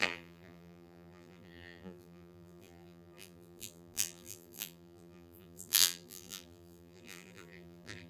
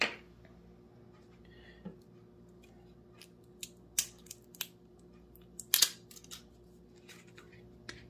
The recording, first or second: second